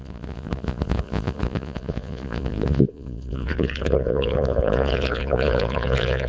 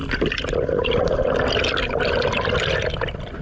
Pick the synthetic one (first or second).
first